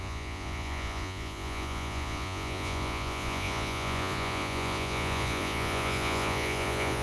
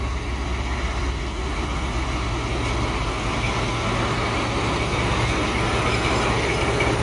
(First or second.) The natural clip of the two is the second